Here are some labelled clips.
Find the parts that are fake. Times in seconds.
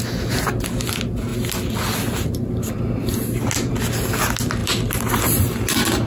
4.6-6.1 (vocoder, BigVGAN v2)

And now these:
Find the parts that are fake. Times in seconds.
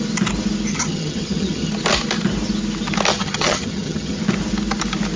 0.7-1.7 (vocoder, HiFi-GAN); 3.1-4.2